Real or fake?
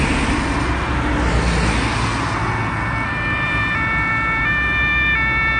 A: real